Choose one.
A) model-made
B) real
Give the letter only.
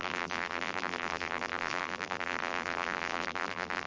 A